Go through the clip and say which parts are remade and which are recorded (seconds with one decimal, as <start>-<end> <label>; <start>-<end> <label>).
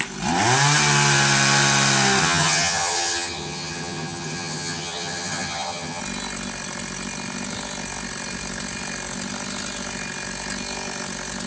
0.0-2.2 recorded; 2.2-6.0 remade; 6.0-11.5 recorded